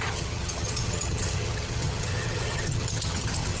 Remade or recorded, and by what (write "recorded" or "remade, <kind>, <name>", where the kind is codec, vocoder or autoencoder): remade, vocoder, HiFi-GAN